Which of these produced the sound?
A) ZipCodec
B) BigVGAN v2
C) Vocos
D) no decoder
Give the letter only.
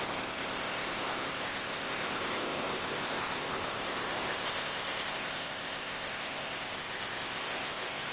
A